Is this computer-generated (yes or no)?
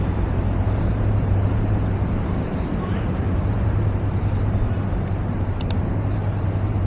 yes